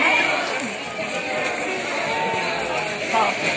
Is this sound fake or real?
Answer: real